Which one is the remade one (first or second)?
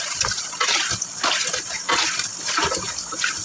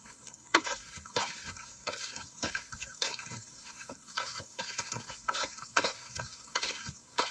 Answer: second